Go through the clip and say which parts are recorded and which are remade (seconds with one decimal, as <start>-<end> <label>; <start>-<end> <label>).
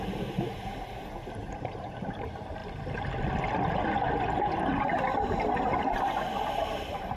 0.0-2.6 remade; 2.6-6.5 recorded; 6.5-7.2 remade